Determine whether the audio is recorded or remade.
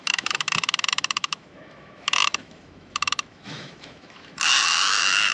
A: remade